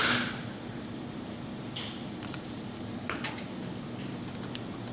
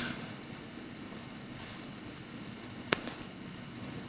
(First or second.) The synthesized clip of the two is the second